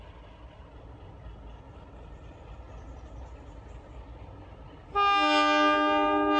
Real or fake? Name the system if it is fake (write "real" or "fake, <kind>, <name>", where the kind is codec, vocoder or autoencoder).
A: real